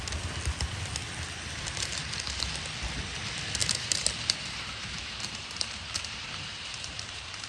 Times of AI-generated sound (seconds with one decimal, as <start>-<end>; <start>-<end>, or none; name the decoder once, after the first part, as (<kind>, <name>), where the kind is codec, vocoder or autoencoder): 3.6-7.5 (vocoder, BigVGAN v2)